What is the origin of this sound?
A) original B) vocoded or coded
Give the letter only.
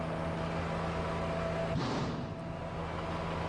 A